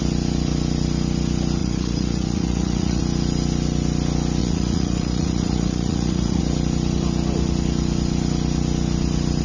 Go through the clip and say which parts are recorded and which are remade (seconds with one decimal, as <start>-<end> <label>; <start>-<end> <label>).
0.0-1.6 recorded; 1.6-3.0 remade; 3.0-4.4 recorded; 4.4-6.4 remade; 6.4-9.4 recorded